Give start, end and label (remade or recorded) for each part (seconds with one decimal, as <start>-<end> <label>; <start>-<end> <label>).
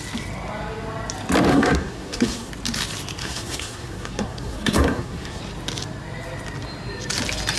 0.0-1.5 recorded; 1.5-2.5 remade; 2.5-3.2 recorded; 3.2-5.4 remade; 5.4-7.6 recorded